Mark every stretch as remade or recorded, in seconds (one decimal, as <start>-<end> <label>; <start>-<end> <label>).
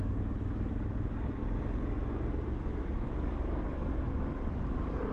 0.0-1.4 remade; 1.4-2.8 recorded; 2.8-5.1 remade